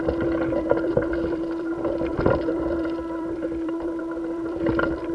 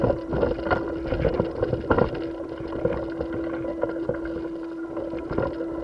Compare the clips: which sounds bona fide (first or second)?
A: second